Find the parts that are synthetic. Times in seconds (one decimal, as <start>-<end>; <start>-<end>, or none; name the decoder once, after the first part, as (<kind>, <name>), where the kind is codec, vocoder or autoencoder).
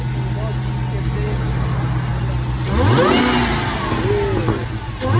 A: none